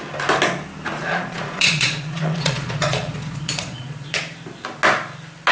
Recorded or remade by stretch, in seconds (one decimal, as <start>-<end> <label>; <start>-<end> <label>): 0.0-1.0 recorded; 1.0-4.2 remade; 4.2-5.5 recorded